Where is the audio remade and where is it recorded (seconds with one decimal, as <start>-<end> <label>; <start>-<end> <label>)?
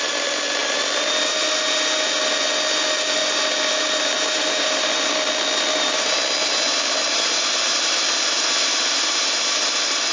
0.0-10.1 recorded